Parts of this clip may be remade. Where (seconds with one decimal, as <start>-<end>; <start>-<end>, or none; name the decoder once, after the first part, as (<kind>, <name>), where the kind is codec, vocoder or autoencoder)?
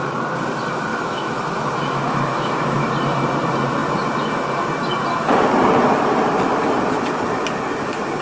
0.9-2.9 (autoencoder, DAC-VAE)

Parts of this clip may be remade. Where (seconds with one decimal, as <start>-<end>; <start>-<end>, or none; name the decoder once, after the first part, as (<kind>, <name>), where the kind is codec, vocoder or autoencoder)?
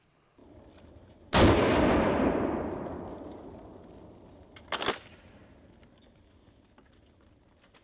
none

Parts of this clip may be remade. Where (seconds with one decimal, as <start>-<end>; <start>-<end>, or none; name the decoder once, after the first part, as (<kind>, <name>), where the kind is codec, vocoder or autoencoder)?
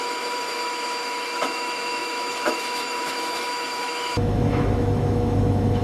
0.0-5.8 (autoencoder, DAC-VAE)